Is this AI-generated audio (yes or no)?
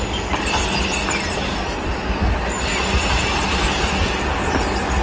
no